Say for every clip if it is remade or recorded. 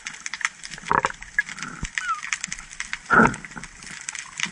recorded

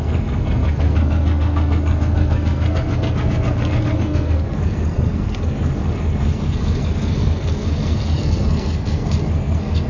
remade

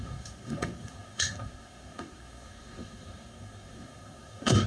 remade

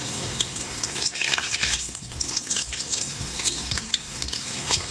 remade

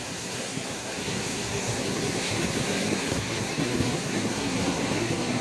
remade